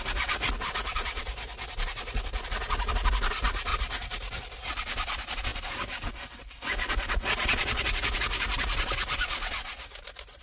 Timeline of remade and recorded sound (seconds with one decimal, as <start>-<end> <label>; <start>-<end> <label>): 0.0-3.7 recorded; 3.7-4.4 remade; 4.4-10.4 recorded